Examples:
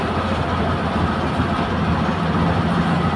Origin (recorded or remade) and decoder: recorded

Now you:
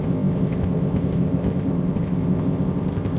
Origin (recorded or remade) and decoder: remade, codec, ZipCodec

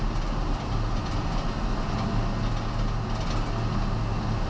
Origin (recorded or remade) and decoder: recorded